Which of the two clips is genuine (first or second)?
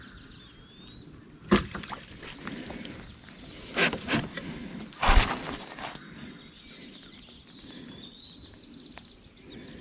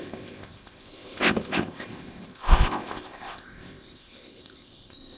first